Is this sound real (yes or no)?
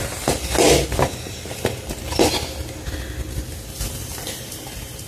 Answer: yes